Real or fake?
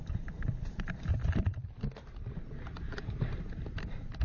real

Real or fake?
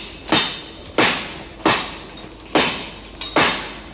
real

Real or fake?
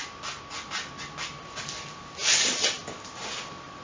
real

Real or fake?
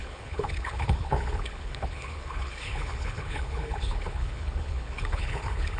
fake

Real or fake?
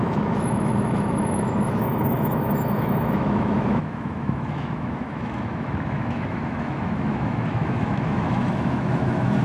fake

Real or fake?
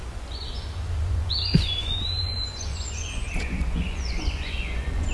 fake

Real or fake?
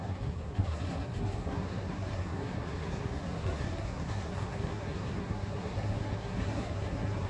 fake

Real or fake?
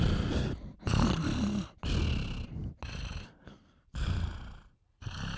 real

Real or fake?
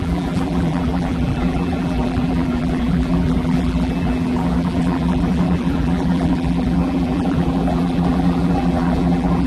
fake